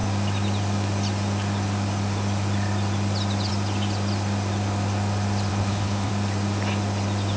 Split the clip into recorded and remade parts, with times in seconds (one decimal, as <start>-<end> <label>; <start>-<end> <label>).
0.0-5.5 recorded; 5.5-6.1 remade; 6.1-7.4 recorded